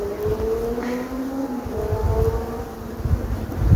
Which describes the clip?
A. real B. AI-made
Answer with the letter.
A